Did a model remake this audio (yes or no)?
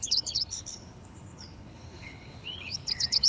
yes